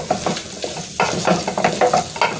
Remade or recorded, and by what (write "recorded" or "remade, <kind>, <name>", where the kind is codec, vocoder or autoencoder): recorded